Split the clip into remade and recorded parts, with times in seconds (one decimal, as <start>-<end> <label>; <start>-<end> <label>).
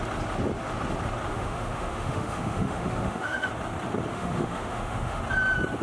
0.0-1.3 recorded; 1.3-3.5 remade; 3.5-4.1 recorded; 4.1-5.2 remade; 5.2-5.8 recorded